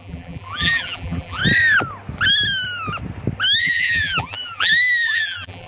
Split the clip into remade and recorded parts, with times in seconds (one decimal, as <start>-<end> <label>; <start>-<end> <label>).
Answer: 0.0-1.4 remade; 1.4-3.6 recorded; 3.6-5.7 remade